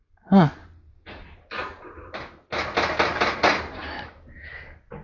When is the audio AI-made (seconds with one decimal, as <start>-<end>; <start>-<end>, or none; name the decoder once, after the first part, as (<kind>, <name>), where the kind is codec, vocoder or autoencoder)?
0.6-2.1 (vocoder, BigVGAN v2); 3.1-4.5